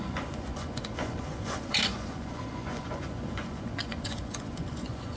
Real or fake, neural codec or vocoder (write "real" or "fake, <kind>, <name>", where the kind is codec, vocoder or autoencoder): fake, vocoder, Vocos